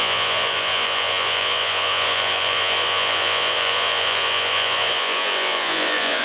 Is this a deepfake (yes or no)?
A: yes